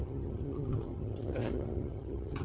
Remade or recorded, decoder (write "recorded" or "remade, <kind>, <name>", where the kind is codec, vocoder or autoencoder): remade, vocoder, HiFi-GAN